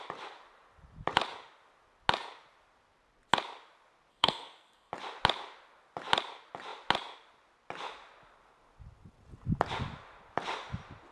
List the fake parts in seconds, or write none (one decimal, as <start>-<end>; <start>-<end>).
4.1-4.9

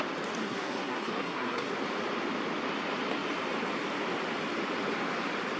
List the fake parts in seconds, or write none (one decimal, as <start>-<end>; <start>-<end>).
0.4-1.7

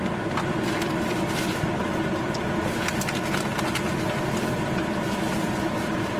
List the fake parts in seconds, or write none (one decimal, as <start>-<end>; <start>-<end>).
none